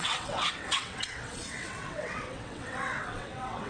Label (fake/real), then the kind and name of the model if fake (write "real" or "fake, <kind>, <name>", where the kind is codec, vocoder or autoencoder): fake, vocoder, WaveNeXt